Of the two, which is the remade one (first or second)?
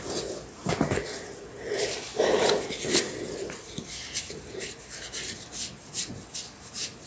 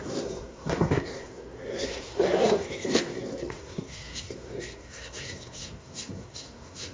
second